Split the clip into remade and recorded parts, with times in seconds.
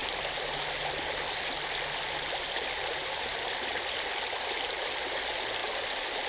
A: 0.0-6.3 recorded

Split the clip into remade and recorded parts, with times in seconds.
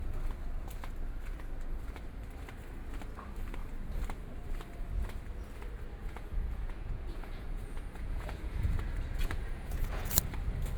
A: 0.0-6.0 recorded; 6.0-10.1 remade; 10.1-10.8 recorded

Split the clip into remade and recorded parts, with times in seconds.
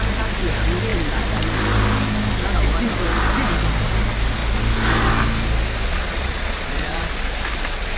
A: 0.0-5.9 recorded; 5.9-7.1 remade; 7.1-8.0 recorded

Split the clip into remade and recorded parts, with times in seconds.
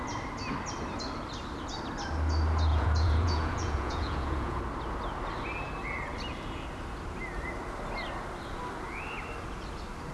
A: 0.0-2.7 recorded; 2.7-4.6 remade; 4.6-10.1 recorded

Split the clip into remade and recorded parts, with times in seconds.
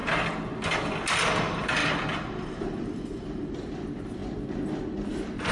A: 0.0-1.4 recorded; 1.4-1.8 remade; 1.8-2.4 recorded; 2.4-4.2 remade; 4.2-5.1 recorded; 5.1-5.5 remade